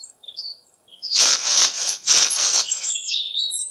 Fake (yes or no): yes